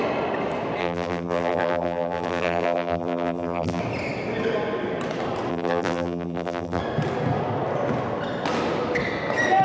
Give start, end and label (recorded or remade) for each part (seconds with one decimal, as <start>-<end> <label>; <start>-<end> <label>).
0.0-0.8 recorded; 0.8-3.8 remade; 3.8-5.5 recorded; 5.5-6.8 remade; 6.8-9.6 recorded